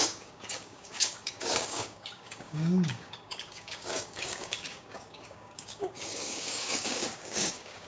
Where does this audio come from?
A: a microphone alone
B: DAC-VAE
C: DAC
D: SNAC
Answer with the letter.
C